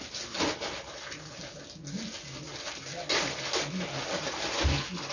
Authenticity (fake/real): real